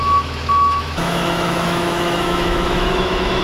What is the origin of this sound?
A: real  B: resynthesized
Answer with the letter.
B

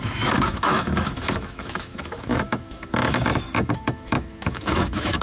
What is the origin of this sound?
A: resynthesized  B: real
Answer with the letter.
A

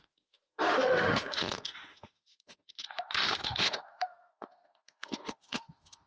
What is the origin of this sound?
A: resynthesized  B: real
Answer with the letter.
A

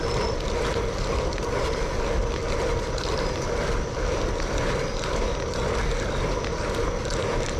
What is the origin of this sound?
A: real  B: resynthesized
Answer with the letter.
A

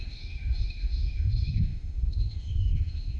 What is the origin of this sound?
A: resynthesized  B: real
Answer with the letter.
A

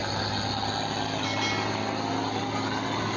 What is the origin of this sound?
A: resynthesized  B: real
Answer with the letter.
B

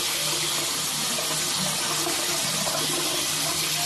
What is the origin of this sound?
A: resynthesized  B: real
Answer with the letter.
B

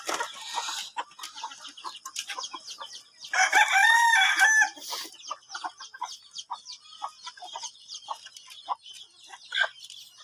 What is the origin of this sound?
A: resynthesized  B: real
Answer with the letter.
B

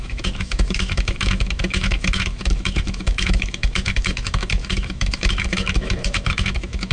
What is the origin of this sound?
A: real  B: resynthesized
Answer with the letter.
B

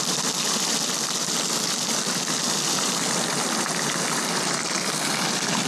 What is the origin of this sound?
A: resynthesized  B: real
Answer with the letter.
B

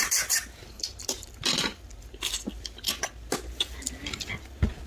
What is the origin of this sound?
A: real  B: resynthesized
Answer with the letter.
A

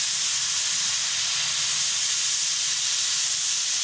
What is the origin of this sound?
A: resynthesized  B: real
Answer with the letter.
B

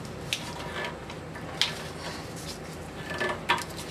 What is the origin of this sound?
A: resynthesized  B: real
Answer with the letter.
B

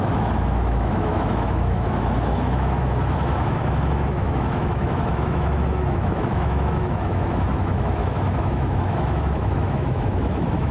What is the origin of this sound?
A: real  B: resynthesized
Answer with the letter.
B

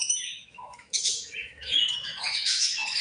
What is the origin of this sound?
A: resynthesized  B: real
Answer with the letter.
A